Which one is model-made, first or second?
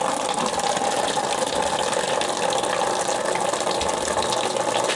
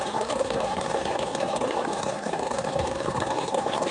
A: second